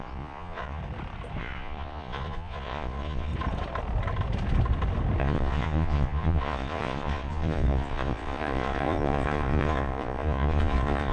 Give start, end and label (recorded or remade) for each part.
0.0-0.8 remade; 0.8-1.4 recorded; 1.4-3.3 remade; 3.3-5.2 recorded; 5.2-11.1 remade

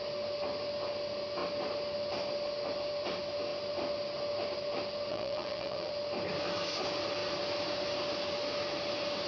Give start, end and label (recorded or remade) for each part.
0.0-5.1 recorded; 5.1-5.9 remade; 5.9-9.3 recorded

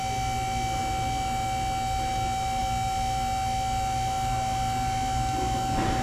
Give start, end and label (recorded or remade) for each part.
0.0-6.0 recorded